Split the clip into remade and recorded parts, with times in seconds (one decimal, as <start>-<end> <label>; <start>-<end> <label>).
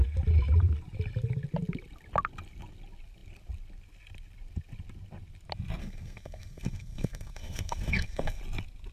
0.0-5.8 recorded; 5.8-8.4 remade; 8.4-8.9 recorded